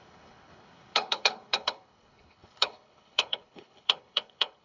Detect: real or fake fake